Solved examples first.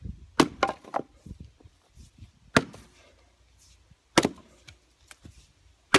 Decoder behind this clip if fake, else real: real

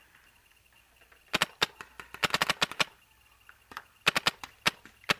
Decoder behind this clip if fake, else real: real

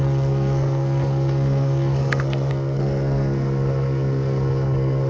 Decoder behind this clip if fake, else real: fake, codec, SNAC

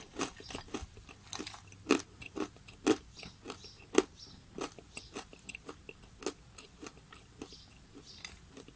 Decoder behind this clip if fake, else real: real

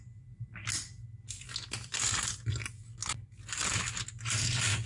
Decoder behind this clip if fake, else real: real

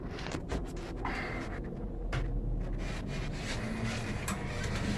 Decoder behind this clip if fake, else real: real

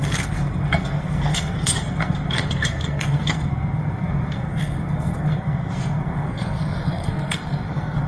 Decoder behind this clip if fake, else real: fake, codec, SNAC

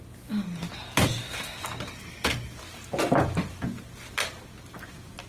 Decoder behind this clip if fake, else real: real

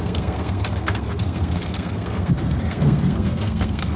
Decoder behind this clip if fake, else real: fake, codec, SNAC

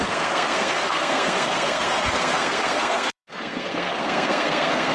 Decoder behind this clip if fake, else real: fake, codec, SNAC